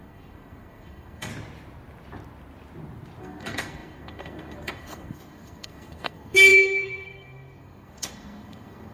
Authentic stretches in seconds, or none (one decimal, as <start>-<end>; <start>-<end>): 1.3-3.2